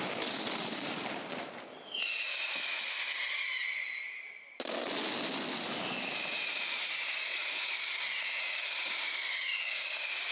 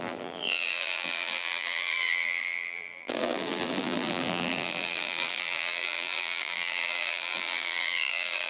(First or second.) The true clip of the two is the first